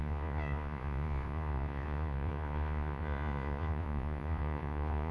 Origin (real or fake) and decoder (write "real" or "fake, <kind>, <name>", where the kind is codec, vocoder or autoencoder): fake, vocoder, Vocos